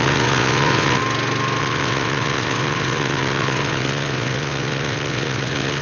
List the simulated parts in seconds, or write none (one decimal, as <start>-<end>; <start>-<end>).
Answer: 0.0-1.0; 1.6-5.8